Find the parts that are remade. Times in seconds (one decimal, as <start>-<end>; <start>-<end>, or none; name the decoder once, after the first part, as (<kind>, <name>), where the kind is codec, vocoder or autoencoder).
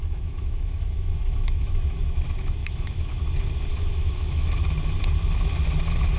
0.0-1.8 (autoencoder, DAC-VAE); 2.6-3.2; 3.7-4.6